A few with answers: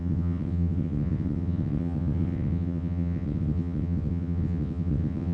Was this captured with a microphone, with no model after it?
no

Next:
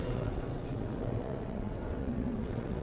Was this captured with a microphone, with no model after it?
no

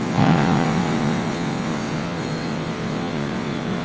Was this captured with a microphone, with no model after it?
no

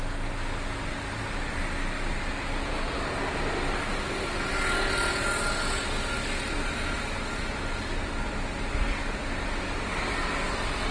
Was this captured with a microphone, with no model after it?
yes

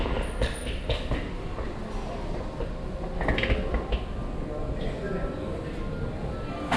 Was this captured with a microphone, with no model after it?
yes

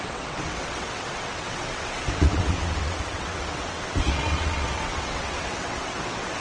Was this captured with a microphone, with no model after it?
no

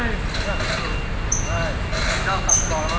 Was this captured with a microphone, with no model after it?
yes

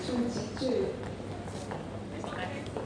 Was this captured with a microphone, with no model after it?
yes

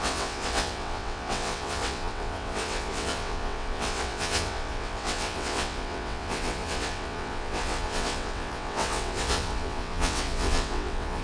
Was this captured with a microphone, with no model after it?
no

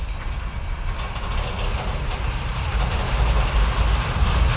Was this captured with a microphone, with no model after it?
yes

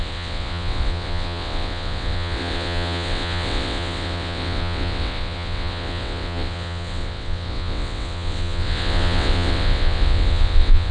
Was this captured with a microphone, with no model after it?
no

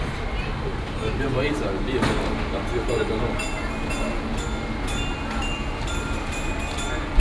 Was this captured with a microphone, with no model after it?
yes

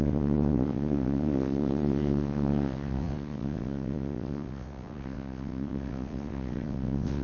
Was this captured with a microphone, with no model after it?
no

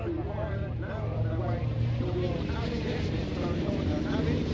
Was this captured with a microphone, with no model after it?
yes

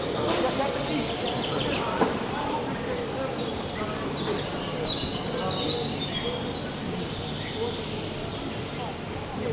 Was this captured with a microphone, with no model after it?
yes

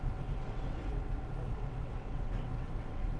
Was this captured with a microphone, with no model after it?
no